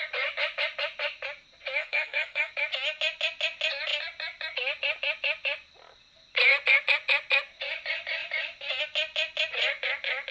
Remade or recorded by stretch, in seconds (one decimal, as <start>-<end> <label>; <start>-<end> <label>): 0.0-1.8 recorded; 1.8-2.5 remade; 2.5-10.3 recorded